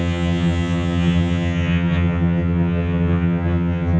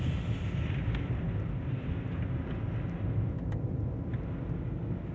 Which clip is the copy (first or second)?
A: first